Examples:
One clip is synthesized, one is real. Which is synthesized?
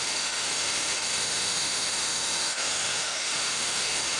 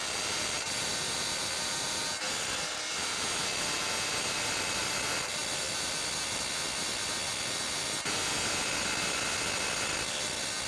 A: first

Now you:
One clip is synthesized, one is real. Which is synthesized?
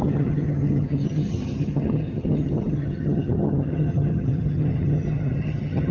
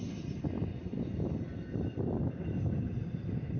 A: first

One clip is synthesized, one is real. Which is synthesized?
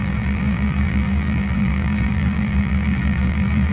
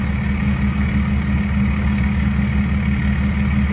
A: first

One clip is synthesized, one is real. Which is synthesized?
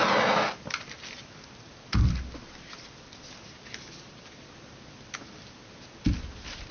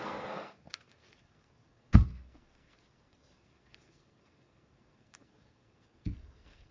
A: second